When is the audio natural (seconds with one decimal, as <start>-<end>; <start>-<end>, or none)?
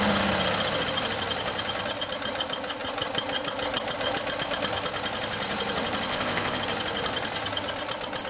0.0-6.1; 6.6-8.3